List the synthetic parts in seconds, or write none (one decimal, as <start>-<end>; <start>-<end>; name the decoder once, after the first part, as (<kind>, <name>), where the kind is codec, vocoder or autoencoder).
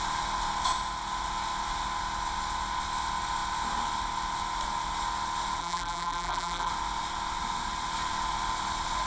5.6-6.7 (vocoder, BigVGAN v2)